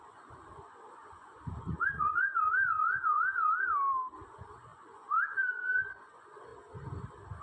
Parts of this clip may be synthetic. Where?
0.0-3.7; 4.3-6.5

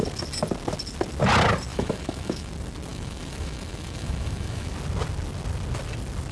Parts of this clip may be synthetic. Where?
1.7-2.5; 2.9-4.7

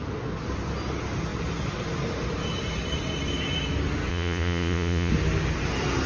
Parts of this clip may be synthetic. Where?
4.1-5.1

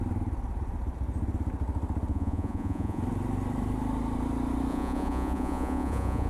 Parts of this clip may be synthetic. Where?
2.1-3.0; 4.7-6.3

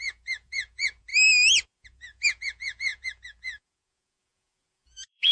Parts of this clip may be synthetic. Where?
0.0-1.1; 1.6-5.3

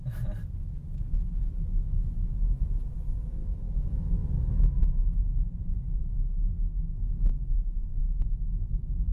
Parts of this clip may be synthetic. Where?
3.4-4.5; 8.0-9.1

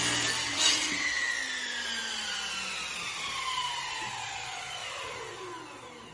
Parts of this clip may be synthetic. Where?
0.5-1.3